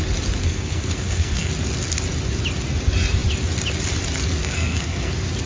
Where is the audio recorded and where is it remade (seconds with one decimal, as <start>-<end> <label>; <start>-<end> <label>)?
0.0-0.4 recorded; 0.4-1.5 remade; 1.5-4.4 recorded; 4.4-5.1 remade; 5.1-5.5 recorded